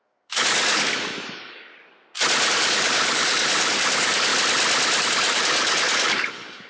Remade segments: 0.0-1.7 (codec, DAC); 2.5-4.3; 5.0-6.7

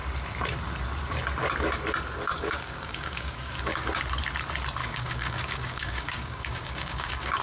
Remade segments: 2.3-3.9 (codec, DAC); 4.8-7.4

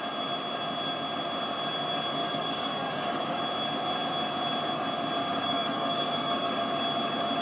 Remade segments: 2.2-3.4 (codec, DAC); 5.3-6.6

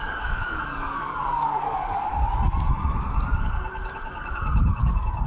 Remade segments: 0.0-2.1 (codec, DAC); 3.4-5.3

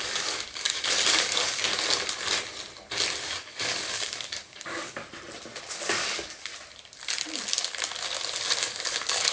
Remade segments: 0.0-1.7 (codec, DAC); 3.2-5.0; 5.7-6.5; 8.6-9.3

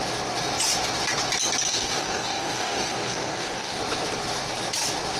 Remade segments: 1.7-3.8 (codec, DAC)

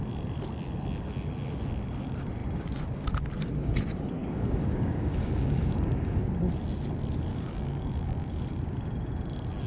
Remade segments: 4.2-6.2 (codec, DAC); 7.3-8.4